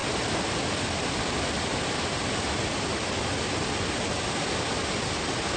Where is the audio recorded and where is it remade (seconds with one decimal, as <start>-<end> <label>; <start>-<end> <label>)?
0.0-1.9 remade; 1.9-5.6 recorded

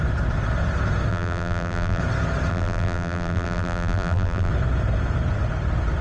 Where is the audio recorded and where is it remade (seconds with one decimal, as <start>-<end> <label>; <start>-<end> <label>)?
0.0-1.1 recorded; 1.1-2.0 remade; 2.0-2.5 recorded; 2.5-4.5 remade; 4.5-6.0 recorded

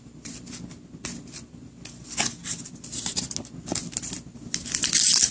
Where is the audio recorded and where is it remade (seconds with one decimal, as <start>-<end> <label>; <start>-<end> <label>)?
0.0-2.4 recorded; 2.4-3.2 remade; 3.2-5.3 recorded

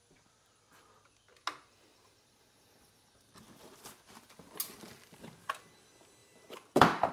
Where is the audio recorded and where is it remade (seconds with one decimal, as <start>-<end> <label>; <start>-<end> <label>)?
0.0-6.2 recorded; 6.2-7.1 remade